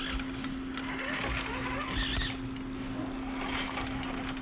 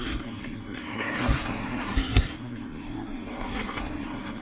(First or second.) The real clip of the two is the first